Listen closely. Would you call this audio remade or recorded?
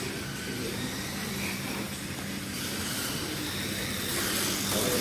recorded